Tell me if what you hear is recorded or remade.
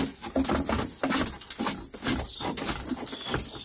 recorded